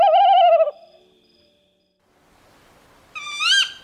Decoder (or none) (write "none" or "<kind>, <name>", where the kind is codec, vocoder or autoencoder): none